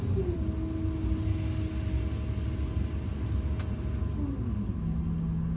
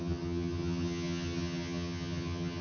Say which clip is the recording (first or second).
first